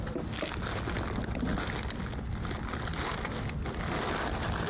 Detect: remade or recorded recorded